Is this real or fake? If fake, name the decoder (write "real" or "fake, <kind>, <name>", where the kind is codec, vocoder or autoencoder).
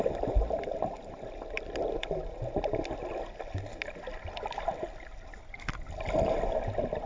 real